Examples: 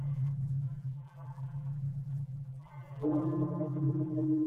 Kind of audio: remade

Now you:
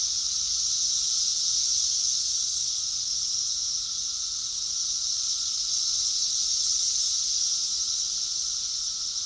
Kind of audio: remade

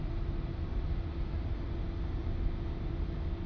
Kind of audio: recorded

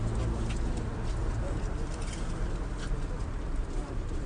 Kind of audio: recorded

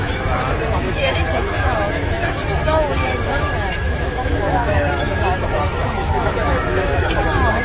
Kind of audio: remade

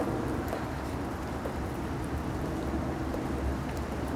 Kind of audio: remade